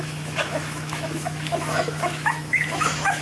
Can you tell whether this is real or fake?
fake